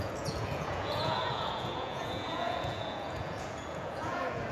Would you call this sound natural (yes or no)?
no